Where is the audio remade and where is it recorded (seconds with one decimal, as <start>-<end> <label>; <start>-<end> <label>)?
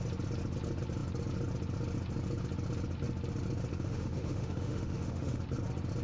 0.0-3.7 recorded; 3.7-5.4 remade; 5.4-6.0 recorded